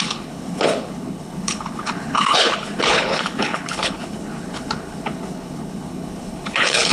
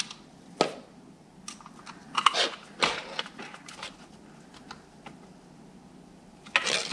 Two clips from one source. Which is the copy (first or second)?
first